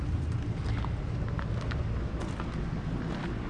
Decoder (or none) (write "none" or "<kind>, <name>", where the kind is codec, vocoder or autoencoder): none